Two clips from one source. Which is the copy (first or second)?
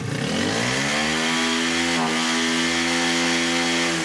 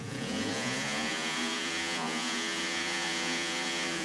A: second